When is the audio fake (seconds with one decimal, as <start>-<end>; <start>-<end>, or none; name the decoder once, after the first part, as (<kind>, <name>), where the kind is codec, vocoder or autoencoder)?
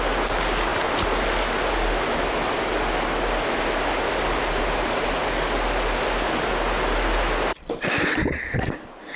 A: none